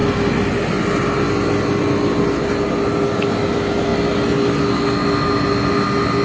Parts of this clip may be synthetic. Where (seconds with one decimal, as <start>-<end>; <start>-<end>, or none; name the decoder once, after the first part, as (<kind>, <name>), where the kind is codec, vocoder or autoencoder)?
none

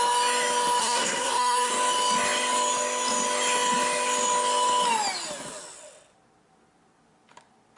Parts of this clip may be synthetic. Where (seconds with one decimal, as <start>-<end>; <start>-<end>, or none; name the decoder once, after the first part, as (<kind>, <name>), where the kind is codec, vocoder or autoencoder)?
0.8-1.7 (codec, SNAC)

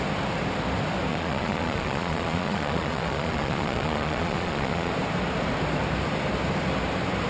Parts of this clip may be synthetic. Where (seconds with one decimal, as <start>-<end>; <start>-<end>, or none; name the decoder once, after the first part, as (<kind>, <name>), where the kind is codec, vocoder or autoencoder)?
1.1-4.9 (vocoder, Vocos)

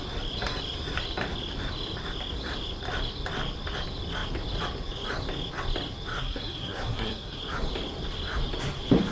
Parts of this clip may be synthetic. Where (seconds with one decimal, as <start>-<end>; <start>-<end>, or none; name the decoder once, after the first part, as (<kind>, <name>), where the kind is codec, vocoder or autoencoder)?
6.1-7.4 (codec, SNAC)